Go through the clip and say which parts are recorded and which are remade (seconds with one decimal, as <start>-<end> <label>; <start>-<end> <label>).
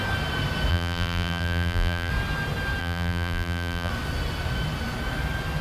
0.0-0.7 recorded; 0.7-2.1 remade; 2.1-2.8 recorded; 2.8-3.9 remade; 3.9-5.6 recorded